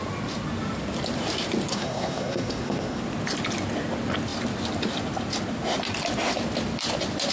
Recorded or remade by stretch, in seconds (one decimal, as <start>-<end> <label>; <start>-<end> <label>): 0.0-1.7 recorded; 1.7-3.0 remade; 3.0-7.3 recorded